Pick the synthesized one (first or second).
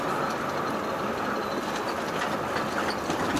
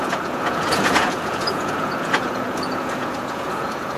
second